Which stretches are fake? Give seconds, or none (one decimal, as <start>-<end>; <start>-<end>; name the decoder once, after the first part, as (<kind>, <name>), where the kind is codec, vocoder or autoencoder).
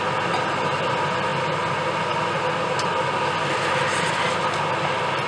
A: none